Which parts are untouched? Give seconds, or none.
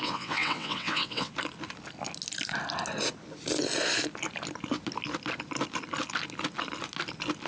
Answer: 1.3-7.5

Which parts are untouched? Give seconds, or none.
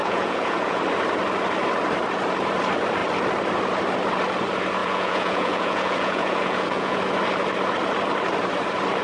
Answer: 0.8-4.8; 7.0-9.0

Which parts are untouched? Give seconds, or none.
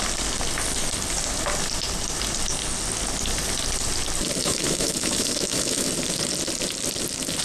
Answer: 0.0-4.4; 5.9-7.4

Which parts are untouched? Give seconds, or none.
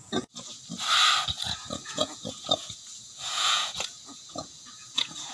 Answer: 0.6-1.3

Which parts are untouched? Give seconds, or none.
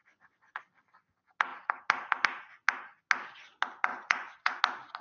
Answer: 0.6-3.9; 4.6-5.0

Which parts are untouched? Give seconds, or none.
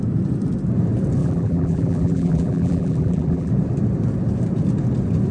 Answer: 0.0-1.2; 3.5-5.3